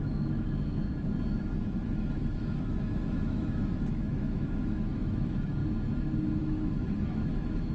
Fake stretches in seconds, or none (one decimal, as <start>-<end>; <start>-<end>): 0.0-0.8; 1.3-5.6; 6.4-7.7